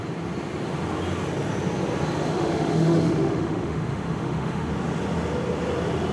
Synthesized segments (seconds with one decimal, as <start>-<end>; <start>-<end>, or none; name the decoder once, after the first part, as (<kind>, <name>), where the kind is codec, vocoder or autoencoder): 2.3-4.7 (autoencoder, DAC-VAE)